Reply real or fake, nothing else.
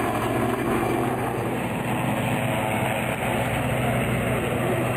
real